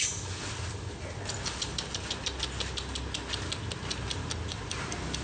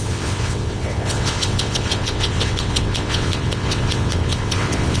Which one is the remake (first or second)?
second